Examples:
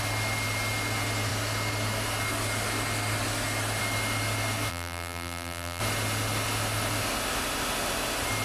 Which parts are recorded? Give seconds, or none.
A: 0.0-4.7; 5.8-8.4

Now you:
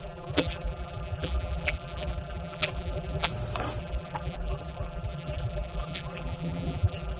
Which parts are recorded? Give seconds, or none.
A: 3.3-3.8

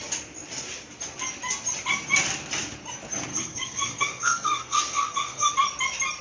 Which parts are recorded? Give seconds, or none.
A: 0.0-3.3; 5.5-6.2

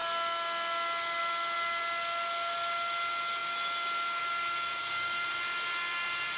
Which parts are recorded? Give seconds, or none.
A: 0.0-4.8; 5.3-6.4

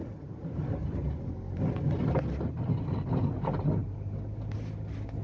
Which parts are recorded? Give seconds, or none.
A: 0.7-5.2

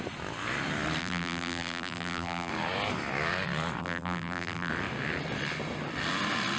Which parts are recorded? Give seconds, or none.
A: 0.0-1.0; 2.5-3.8; 4.7-6.6